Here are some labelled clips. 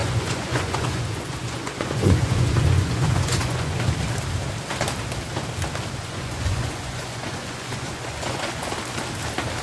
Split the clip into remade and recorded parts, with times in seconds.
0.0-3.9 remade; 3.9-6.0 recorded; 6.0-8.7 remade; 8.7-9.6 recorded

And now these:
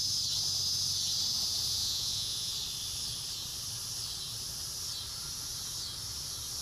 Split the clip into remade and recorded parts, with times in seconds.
0.0-1.8 recorded; 1.8-2.5 remade; 2.5-6.6 recorded

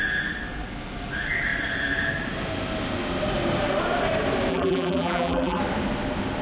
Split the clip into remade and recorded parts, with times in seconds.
0.0-4.5 recorded; 4.5-5.6 remade; 5.6-6.4 recorded

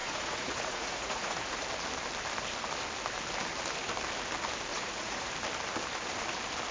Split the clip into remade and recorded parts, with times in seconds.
0.0-1.6 remade; 1.6-4.7 recorded; 4.7-5.3 remade; 5.3-6.7 recorded